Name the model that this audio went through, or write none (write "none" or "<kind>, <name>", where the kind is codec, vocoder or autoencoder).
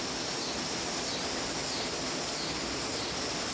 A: none